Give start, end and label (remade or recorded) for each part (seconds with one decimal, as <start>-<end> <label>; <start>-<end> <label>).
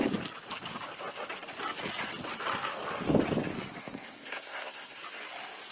0.0-3.8 recorded; 3.8-5.0 remade; 5.0-5.7 recorded